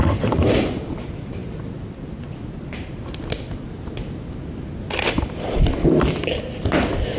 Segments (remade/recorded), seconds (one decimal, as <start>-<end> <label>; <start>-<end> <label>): 0.0-7.2 recorded